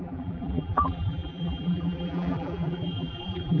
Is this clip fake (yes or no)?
yes